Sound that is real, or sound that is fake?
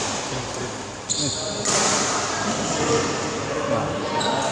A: real